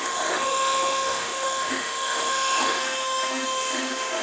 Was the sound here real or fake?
fake